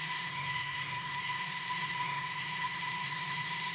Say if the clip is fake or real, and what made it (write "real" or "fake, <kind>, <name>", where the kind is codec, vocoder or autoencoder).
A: fake, codec, SNAC